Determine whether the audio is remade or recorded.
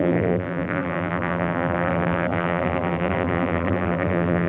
remade